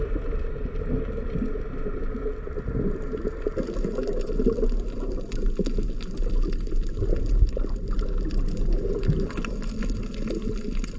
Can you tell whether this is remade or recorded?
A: recorded